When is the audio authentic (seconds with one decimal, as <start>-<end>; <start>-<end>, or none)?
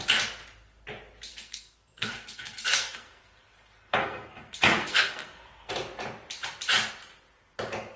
0.0-1.3; 5.7-8.0